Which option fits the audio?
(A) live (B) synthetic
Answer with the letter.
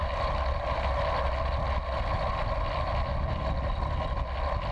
A